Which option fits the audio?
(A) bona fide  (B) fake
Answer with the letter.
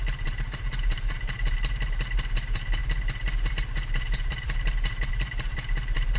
B